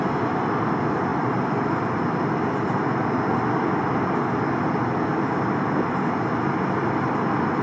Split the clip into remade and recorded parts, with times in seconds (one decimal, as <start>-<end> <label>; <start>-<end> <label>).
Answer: 0.0-1.1 recorded; 1.1-1.9 remade; 1.9-7.6 recorded